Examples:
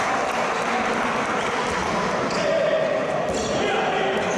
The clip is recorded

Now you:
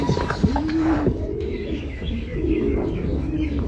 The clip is remade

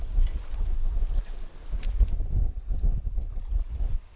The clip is recorded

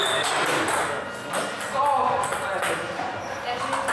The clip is recorded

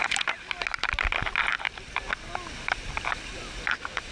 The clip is recorded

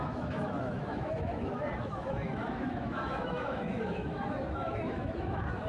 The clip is remade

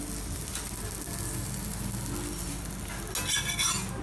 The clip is recorded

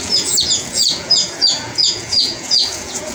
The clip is remade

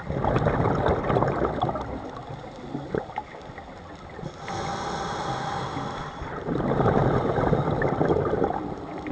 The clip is recorded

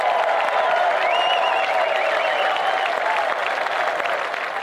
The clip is recorded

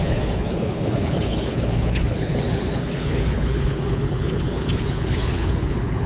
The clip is remade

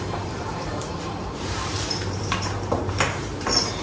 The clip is remade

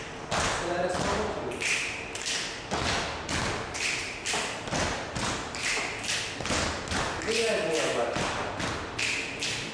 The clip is recorded